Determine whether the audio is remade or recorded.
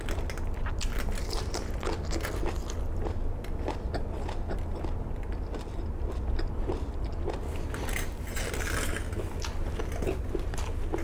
recorded